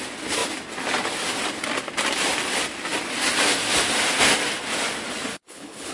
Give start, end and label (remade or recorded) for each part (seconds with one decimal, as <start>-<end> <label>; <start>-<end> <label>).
0.0-5.3 recorded; 5.3-5.9 remade